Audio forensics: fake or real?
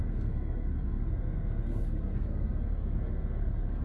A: fake